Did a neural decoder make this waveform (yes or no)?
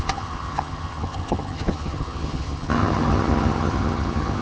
yes